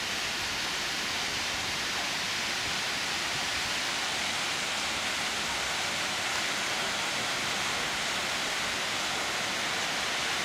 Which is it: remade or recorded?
recorded